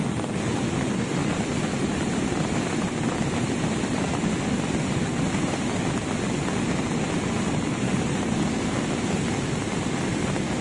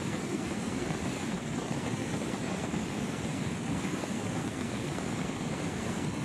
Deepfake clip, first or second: second